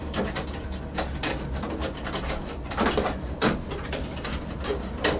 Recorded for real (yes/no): no